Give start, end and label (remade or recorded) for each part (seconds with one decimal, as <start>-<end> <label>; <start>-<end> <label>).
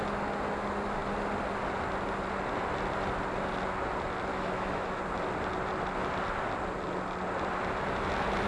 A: 0.0-4.3 recorded; 4.3-5.0 remade; 5.0-8.5 recorded